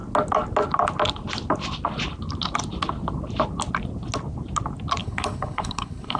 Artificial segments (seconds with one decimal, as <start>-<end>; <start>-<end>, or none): 5.0-6.2